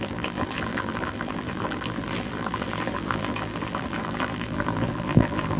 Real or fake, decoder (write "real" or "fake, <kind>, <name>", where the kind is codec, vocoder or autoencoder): fake, vocoder, BigVGAN v2